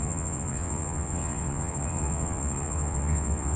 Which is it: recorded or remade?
remade